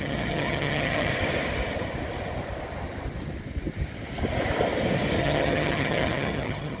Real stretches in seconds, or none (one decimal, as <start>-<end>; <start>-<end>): 1.1-5.2